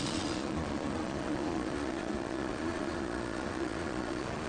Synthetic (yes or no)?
yes